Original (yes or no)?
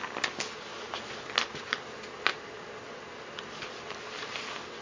yes